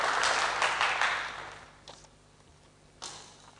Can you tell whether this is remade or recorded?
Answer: recorded